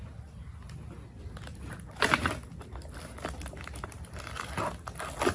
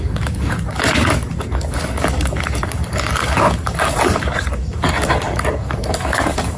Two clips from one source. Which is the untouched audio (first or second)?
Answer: first